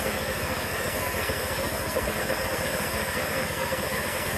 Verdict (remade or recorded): remade